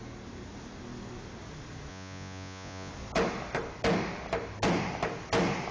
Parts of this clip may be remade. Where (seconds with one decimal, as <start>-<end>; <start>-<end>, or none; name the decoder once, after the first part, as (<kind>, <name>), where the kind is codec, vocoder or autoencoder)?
1.9-2.9 (vocoder, Vocos)